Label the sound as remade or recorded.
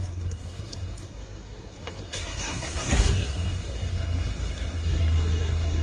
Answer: remade